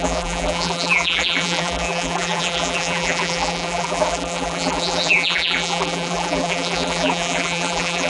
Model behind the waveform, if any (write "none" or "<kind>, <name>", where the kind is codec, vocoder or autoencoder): vocoder, BigVGAN v2